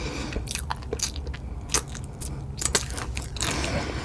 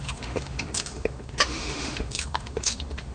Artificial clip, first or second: second